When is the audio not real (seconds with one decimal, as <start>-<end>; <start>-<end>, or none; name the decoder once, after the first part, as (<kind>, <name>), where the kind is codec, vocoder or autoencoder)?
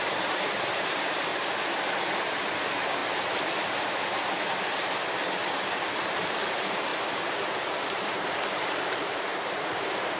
0.0-1.3 (vocoder, BigVGAN v2); 2.4-3.0; 6.0-6.9; 7.9-10.2